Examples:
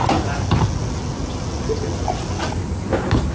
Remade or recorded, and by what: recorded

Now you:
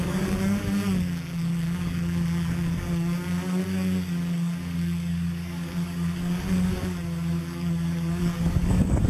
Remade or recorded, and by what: remade, codec, DAC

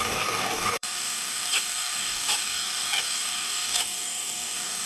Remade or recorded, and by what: remade, codec, DAC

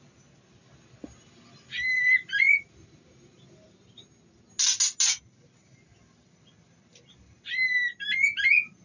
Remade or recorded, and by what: recorded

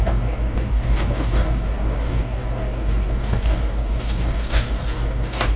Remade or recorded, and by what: remade, codec, DAC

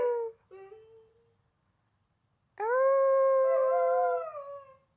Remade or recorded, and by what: recorded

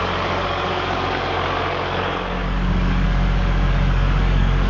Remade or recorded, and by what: remade, codec, DAC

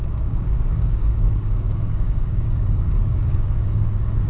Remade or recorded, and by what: remade, codec, DAC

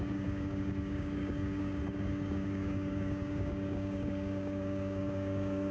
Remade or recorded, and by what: remade, codec, DAC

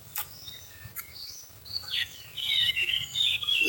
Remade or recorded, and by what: remade, codec, DAC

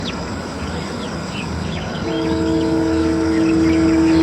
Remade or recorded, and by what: remade, codec, DAC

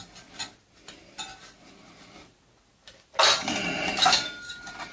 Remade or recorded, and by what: recorded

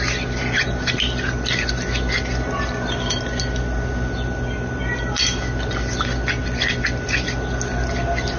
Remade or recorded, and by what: recorded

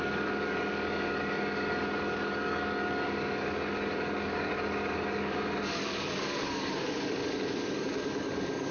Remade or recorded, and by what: remade, codec, DAC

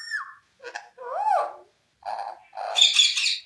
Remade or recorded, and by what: recorded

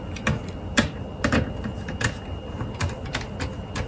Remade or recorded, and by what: recorded